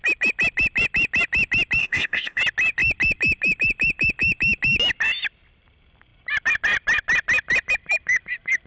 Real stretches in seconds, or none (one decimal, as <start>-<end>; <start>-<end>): 0.0-1.8; 2.4-8.7